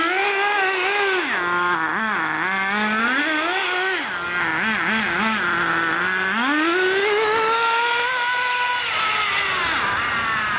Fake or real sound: real